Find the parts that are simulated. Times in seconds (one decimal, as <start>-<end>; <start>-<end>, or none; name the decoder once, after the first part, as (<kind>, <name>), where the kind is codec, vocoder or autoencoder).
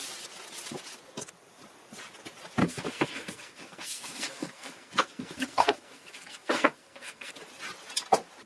2.6-7.3 (codec, SNAC)